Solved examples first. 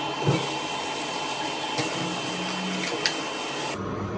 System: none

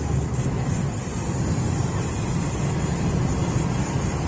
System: none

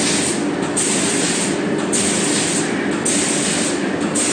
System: none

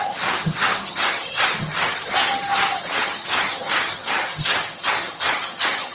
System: vocoder, HiFi-GAN